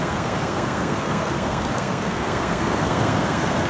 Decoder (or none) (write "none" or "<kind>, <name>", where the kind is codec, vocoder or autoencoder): codec, SNAC